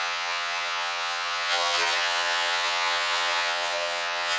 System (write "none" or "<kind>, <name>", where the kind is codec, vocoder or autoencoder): vocoder, HiFi-GAN